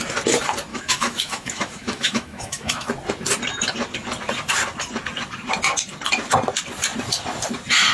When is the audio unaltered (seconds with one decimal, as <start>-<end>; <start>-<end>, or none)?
0.0-0.7; 2.9-7.9